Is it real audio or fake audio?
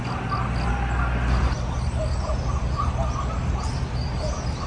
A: real